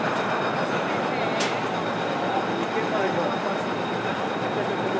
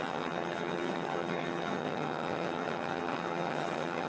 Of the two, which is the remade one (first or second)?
second